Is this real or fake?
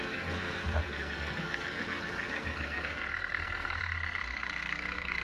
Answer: fake